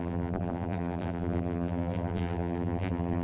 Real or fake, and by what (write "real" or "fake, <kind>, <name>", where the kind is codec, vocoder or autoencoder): fake, vocoder, BigVGAN v2